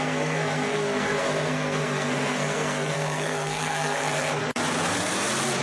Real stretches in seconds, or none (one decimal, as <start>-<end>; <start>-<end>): 4.6-5.6